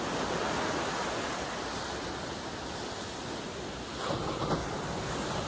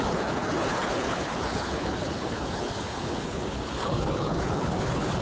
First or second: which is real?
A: first